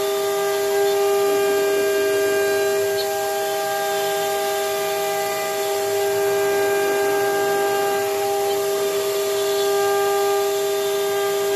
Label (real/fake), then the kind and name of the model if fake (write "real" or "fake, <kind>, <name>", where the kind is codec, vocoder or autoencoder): real